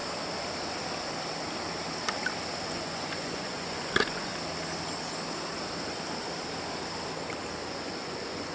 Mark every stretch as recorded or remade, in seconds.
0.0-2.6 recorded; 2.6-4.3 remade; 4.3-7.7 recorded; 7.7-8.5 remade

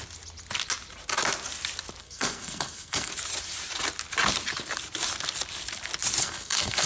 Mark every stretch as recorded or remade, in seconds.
0.0-2.0 recorded; 2.0-3.1 remade; 3.1-6.2 recorded; 6.2-6.9 remade

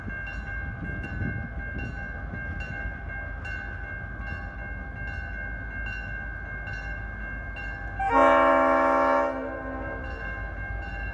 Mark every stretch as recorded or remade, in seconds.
0.0-11.1 recorded

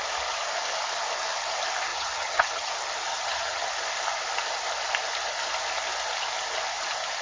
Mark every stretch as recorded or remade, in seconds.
0.0-1.9 recorded; 1.9-2.7 remade; 2.7-3.1 recorded; 3.1-3.7 remade; 3.7-7.2 recorded

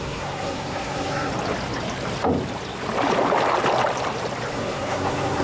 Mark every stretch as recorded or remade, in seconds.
0.0-1.3 remade; 1.3-4.5 recorded; 4.5-5.4 remade

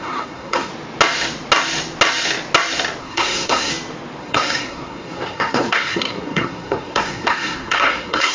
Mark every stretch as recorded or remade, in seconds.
0.0-0.7 remade; 0.7-3.0 recorded; 3.0-3.7 remade; 3.7-4.2 recorded; 4.2-8.3 remade

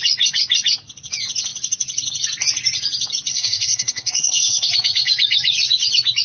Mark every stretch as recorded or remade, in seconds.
0.0-3.3 recorded; 3.3-4.7 remade; 4.7-6.2 recorded

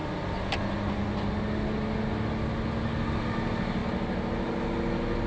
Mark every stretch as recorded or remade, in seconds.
0.0-5.3 recorded